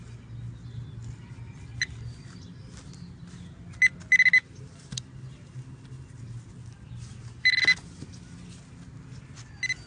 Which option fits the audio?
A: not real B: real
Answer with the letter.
B